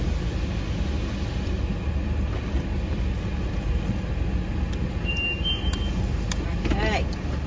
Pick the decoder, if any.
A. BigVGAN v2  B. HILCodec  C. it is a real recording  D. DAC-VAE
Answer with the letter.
C